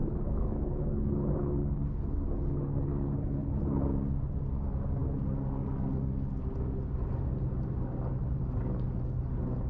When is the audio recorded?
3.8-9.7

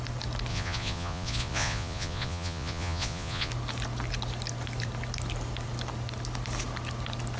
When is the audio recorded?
0.0-0.5; 3.5-7.4

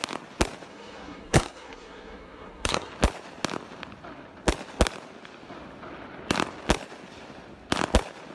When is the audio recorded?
0.0-0.7; 2.9-8.3

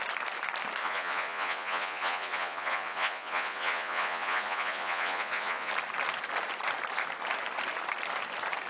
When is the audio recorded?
0.0-0.8; 5.7-8.7

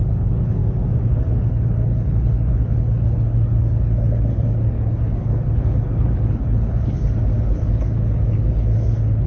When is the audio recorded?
0.6-1.5